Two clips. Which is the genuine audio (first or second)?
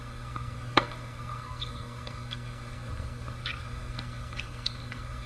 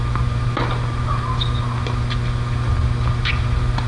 second